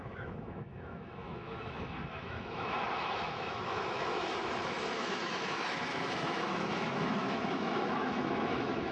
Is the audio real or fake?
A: fake